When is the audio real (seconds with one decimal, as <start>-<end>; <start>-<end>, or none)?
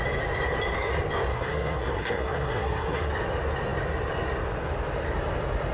0.0-1.3; 3.1-5.7